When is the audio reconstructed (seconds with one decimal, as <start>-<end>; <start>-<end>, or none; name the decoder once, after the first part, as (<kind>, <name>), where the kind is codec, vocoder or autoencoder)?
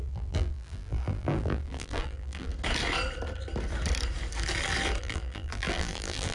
0.0-2.5 (vocoder, BigVGAN v2); 5.0-6.3